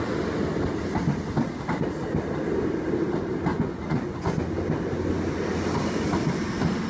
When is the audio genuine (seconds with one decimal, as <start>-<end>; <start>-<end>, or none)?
0.0-3.5; 4.5-6.9